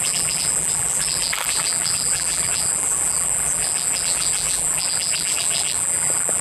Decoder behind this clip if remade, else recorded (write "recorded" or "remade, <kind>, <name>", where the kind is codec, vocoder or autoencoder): remade, vocoder, BigVGAN v2